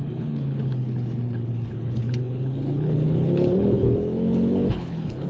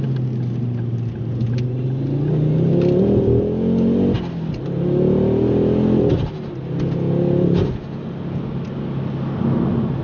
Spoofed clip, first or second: first